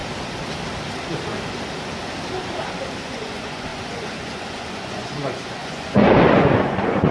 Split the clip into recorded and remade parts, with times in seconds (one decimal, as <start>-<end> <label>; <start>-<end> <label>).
0.0-3.0 recorded; 3.0-7.1 remade